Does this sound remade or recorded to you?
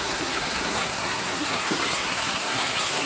remade